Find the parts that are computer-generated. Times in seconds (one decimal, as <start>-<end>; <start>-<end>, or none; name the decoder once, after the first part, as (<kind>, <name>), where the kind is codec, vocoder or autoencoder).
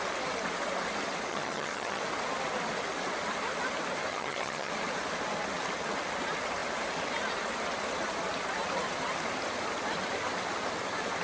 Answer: 1.3-2.0 (vocoder, HiFi-GAN); 4.1-4.7